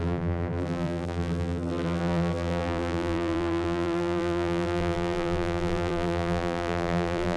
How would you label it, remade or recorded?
remade